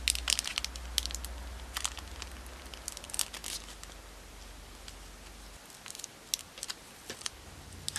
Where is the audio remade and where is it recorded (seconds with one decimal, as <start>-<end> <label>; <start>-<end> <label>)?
0.0-8.0 recorded